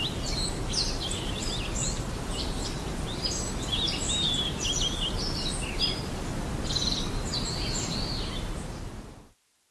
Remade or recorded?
recorded